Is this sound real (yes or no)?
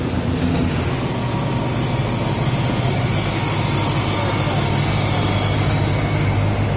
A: yes